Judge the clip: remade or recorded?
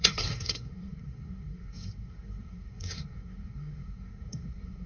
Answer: remade